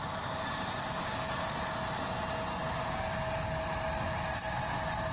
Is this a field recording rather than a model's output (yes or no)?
yes